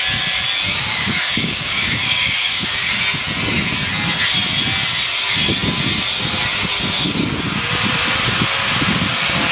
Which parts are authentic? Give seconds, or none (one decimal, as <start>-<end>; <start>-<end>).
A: 0.0-0.7; 2.9-9.5